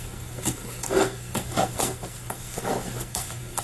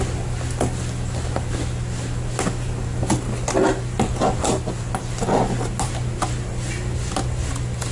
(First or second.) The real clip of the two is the second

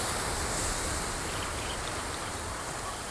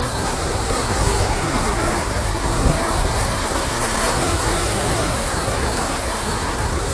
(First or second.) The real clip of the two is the first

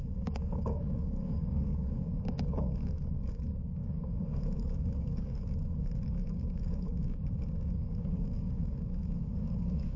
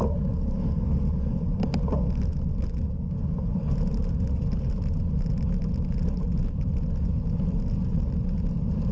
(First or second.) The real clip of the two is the second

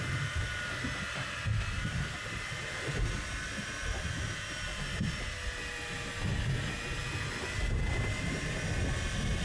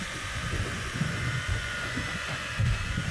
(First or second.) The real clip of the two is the first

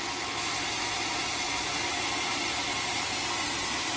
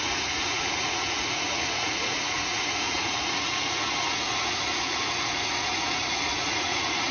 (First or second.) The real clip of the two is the first